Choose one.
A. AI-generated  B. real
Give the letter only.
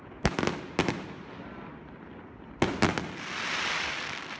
B